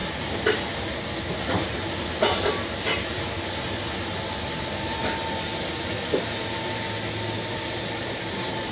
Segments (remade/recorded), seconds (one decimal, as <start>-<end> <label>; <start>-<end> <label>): 0.0-8.7 recorded